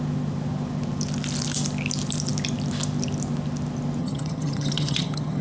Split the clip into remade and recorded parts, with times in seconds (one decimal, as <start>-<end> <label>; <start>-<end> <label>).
0.0-4.0 recorded; 4.0-5.4 remade